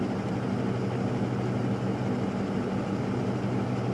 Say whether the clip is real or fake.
real